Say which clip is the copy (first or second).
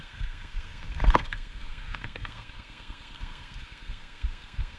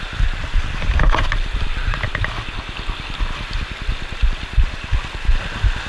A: first